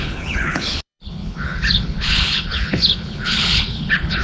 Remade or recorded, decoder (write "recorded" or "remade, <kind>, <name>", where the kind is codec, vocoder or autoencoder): remade, codec, HILCodec